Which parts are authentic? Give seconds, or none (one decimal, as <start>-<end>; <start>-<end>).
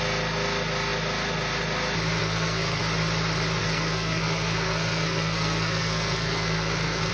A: 0.0-2.2; 2.8-3.6